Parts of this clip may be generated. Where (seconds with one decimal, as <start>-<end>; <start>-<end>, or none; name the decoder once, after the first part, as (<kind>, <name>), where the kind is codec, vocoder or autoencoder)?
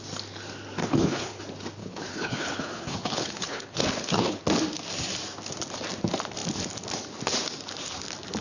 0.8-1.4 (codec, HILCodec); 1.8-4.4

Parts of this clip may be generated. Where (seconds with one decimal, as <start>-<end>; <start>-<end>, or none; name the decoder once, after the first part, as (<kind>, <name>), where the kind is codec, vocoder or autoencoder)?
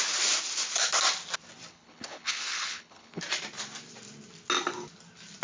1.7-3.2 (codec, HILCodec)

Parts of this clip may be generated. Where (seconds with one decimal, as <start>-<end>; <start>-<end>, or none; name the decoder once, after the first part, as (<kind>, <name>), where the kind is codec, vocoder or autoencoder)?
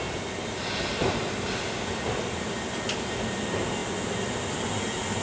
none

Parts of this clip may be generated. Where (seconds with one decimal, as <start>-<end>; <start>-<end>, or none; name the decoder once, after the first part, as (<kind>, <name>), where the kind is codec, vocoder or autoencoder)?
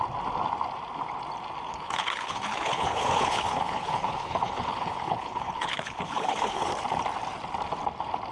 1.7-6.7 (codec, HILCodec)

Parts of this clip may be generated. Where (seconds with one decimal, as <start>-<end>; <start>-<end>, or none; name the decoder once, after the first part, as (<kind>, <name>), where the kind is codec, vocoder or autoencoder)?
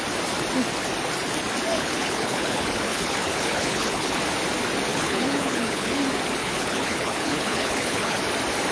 1.7-4.2 (codec, HILCodec); 4.9-6.0; 6.4-8.2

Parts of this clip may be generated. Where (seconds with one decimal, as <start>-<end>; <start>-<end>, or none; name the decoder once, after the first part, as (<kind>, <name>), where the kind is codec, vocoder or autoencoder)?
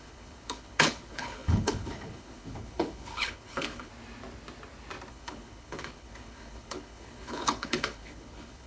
0.0-3.9 (codec, HILCodec); 5.1-8.7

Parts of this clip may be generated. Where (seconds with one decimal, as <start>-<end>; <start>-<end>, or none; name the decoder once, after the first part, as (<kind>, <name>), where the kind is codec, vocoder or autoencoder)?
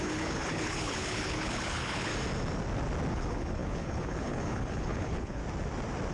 0.0-2.1 (codec, HILCodec); 3.1-5.4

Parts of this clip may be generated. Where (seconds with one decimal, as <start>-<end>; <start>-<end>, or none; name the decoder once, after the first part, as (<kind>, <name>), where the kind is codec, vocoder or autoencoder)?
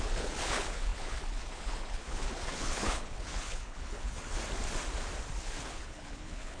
0.0-4.4 (codec, HILCodec); 5.4-6.6